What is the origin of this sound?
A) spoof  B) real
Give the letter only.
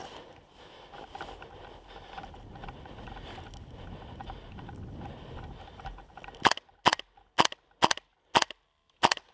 B